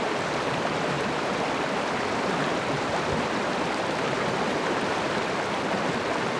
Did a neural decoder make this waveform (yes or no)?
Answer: yes